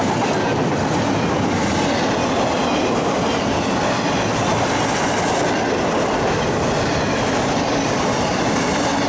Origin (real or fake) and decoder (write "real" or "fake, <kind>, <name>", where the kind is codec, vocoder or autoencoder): real